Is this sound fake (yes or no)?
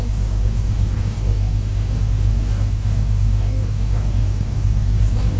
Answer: yes